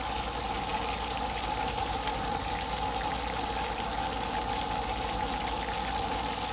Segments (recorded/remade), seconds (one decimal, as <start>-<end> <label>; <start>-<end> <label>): 0.0-6.5 recorded